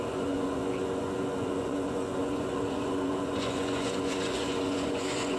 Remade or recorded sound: remade